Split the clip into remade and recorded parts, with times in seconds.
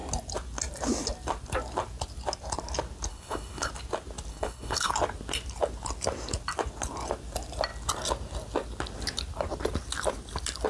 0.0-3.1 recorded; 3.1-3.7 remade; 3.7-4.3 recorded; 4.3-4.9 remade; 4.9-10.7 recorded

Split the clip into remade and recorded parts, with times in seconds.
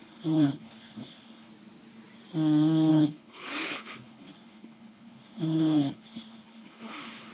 0.0-1.5 remade; 1.5-2.9 recorded; 2.9-7.3 remade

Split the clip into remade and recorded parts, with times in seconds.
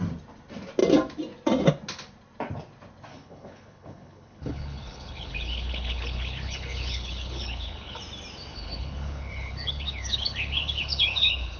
0.0-3.1 recorded; 3.1-8.0 remade; 8.0-8.5 recorded; 8.5-11.6 remade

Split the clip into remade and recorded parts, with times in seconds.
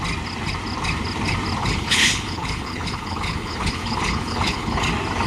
0.0-1.6 recorded; 1.6-4.8 remade; 4.8-5.3 recorded